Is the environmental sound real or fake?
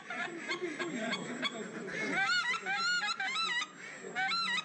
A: real